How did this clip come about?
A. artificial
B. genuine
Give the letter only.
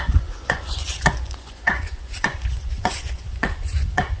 A